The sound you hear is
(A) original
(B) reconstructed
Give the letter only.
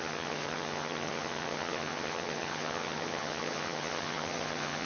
B